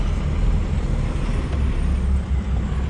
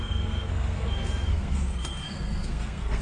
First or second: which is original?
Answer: first